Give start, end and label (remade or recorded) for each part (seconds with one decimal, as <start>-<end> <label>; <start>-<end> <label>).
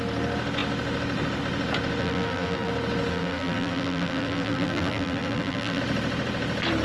0.0-2.0 recorded; 2.0-2.7 remade; 2.7-3.1 recorded; 3.1-5.8 remade; 5.8-6.8 recorded